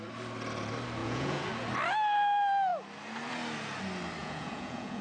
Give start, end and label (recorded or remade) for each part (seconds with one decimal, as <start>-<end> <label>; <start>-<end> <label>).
0.0-1.0 recorded; 1.0-1.5 remade; 1.5-4.2 recorded; 4.2-5.0 remade

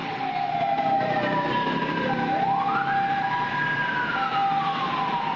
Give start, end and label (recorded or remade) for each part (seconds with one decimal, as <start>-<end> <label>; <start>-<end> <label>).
0.0-5.4 recorded

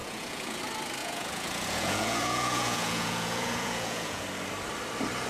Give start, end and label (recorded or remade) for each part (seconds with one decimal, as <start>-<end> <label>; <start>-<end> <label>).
0.0-0.6 remade; 0.6-1.0 recorded; 1.0-4.2 remade; 4.2-5.3 recorded

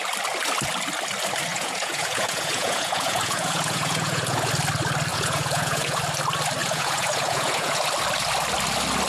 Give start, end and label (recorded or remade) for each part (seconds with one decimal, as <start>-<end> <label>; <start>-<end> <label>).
0.0-1.5 recorded; 1.5-4.5 remade; 4.5-5.1 recorded; 5.1-6.0 remade; 6.0-6.6 recorded; 6.6-7.8 remade; 7.8-9.1 recorded

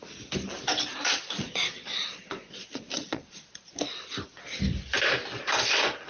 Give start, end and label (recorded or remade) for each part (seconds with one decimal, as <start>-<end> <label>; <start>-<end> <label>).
0.0-0.9 recorded; 0.9-3.8 remade; 3.8-6.1 recorded

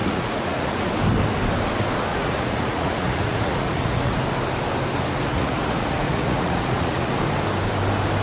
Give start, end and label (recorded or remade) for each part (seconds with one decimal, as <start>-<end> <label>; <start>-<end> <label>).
0.0-0.9 remade; 0.9-2.1 recorded; 2.1-4.2 remade; 4.2-5.3 recorded; 5.3-7.2 remade; 7.2-8.2 recorded